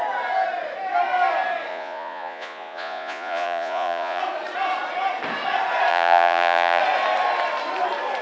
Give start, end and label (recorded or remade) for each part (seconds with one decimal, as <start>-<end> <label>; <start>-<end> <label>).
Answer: 0.0-1.7 recorded; 1.7-4.2 remade; 4.2-5.9 recorded; 5.9-6.8 remade; 6.8-8.2 recorded